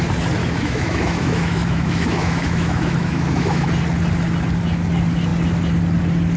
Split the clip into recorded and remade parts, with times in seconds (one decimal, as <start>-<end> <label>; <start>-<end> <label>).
0.0-0.4 recorded; 0.4-3.7 remade; 3.7-6.4 recorded